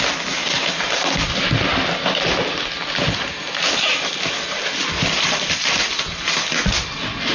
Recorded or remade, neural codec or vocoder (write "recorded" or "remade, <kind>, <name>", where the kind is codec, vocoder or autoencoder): recorded